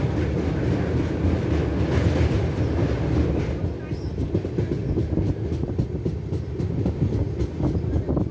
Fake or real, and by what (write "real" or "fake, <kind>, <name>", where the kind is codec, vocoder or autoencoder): real